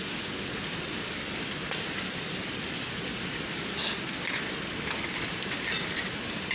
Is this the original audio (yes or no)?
yes